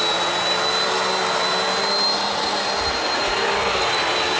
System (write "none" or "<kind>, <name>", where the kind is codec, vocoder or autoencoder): none